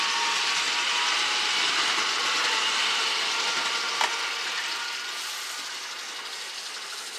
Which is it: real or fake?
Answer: real